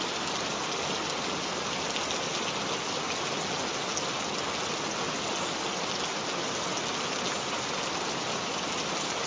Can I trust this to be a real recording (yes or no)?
yes